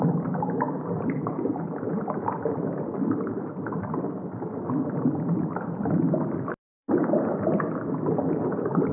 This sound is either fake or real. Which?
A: fake